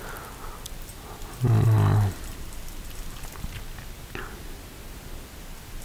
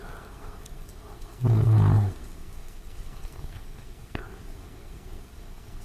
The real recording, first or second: first